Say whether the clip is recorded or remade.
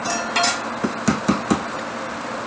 recorded